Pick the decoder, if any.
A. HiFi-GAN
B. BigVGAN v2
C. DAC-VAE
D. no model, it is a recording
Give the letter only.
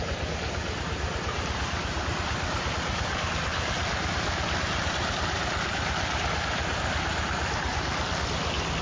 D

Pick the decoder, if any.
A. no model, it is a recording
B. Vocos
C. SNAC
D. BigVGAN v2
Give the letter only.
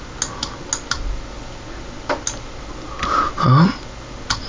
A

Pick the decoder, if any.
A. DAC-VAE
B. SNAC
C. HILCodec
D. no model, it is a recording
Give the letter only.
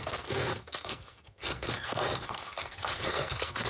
B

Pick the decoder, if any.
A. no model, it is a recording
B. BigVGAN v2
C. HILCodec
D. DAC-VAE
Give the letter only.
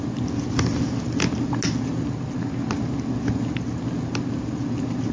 A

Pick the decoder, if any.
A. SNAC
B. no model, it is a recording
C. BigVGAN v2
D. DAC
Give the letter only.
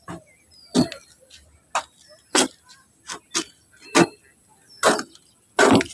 B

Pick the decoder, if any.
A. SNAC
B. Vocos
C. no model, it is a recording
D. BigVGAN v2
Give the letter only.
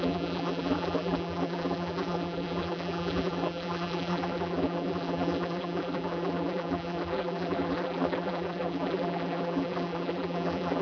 D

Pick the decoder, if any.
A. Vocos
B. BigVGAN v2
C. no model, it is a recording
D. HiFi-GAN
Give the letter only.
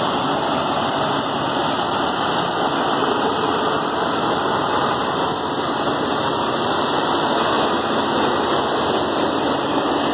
C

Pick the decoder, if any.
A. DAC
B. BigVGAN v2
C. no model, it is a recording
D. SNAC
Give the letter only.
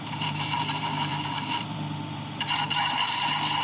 B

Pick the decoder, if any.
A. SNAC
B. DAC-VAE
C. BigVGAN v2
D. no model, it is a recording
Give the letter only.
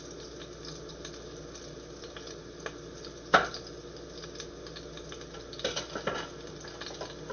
D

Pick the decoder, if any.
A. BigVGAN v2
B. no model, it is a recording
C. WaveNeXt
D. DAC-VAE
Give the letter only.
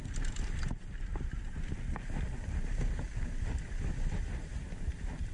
B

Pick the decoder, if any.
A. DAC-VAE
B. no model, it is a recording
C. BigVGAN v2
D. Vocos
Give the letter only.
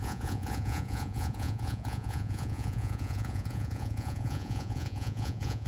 D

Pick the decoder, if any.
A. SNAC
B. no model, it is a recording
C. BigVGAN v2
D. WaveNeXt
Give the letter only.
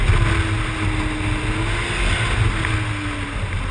B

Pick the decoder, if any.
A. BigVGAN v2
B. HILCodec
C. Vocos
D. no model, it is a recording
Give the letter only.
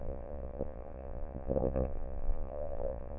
C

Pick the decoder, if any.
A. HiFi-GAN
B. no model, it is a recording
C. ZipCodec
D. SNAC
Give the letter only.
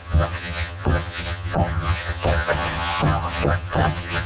A